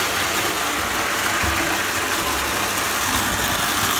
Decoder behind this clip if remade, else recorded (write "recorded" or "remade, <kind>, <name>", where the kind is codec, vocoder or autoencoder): recorded